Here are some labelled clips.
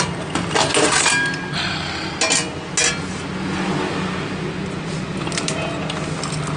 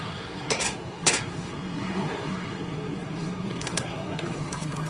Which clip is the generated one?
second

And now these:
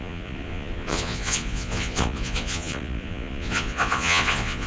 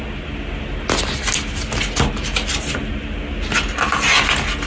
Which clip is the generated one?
first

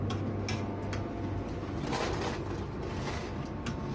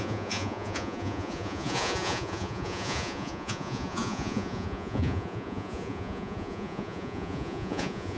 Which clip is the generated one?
second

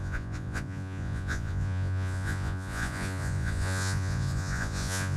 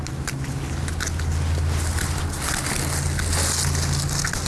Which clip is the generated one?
first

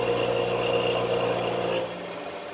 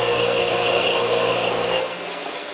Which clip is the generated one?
second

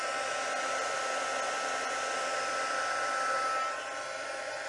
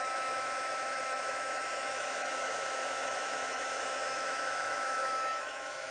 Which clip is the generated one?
second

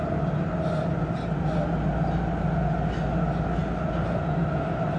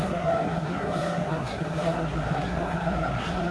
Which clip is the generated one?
second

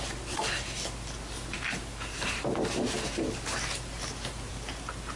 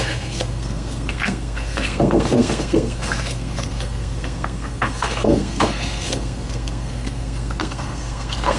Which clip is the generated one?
second